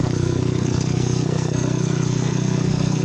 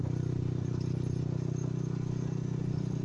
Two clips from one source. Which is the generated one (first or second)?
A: first